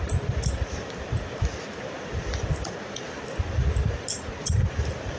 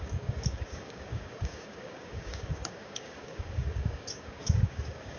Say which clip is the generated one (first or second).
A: second